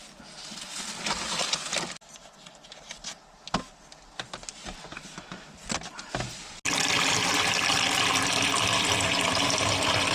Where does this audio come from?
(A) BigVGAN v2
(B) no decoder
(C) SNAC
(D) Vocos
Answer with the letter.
B